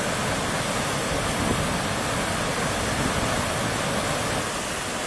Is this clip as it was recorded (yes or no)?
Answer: yes